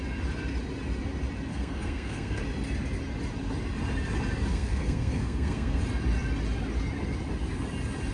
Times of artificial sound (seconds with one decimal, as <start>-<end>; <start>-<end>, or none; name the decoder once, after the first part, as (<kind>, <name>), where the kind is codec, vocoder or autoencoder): 1.5-2.4 (codec, SNAC); 4.5-5.8